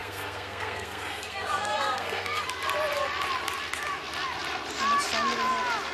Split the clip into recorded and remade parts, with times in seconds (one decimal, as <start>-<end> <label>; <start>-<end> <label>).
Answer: 0.0-2.4 remade; 2.4-5.9 recorded